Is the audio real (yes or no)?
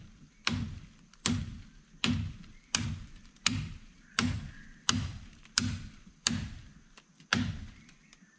no